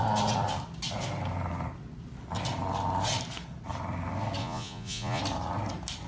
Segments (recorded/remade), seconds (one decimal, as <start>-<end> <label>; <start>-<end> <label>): 0.0-4.4 recorded; 4.4-5.2 remade; 5.2-6.1 recorded